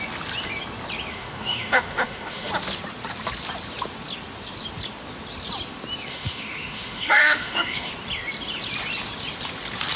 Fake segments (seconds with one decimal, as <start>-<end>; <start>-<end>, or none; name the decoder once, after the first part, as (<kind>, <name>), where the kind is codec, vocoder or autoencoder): 1.1-2.5 (autoencoder, DAC-VAE); 6.1-7.9